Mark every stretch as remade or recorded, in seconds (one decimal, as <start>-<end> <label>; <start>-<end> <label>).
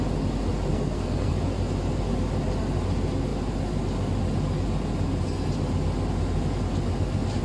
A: 0.0-0.7 recorded; 0.7-1.4 remade; 1.4-7.4 recorded